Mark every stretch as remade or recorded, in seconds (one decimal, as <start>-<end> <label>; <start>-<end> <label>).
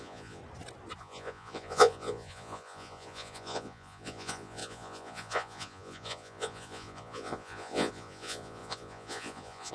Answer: 0.0-0.4 remade; 0.4-1.0 recorded; 1.0-9.7 remade